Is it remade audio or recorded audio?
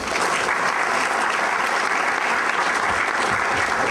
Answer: recorded